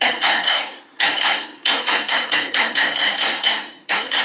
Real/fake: fake